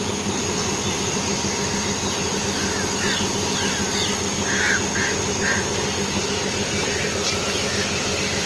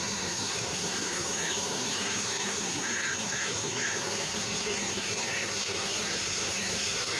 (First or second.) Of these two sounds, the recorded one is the first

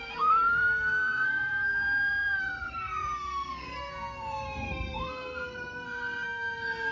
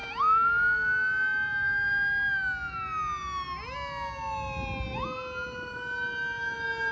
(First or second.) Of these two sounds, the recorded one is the second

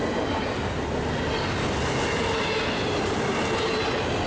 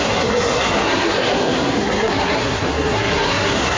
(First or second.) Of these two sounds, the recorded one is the first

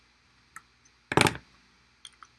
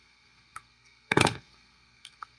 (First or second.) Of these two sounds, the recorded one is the first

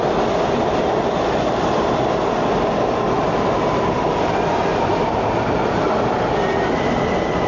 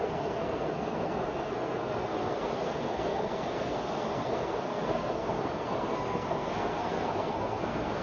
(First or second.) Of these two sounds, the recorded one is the first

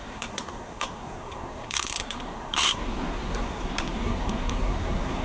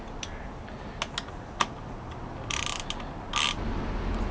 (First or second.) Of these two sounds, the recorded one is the second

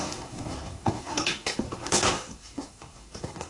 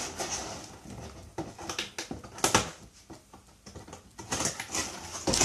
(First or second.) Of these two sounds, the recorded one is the second